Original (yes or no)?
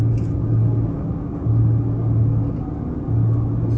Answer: yes